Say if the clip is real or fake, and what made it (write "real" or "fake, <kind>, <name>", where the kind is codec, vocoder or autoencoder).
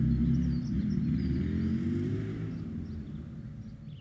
real